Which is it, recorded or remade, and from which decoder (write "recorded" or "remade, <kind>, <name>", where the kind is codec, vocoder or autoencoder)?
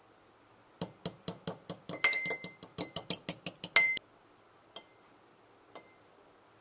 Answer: recorded